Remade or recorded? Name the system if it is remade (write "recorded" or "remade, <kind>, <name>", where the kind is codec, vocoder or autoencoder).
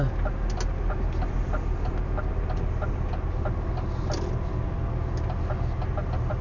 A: recorded